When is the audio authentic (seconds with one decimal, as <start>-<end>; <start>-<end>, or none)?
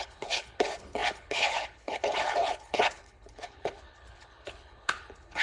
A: none